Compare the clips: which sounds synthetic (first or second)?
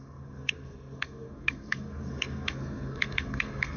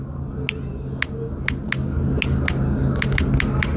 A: first